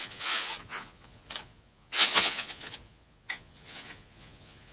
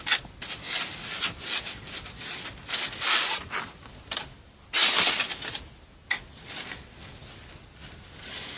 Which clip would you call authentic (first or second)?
second